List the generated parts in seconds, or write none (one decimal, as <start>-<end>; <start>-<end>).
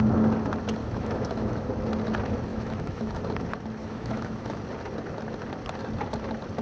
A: 0.8-1.7; 2.5-3.2; 3.8-4.6